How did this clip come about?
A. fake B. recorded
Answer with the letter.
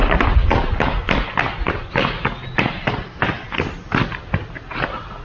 B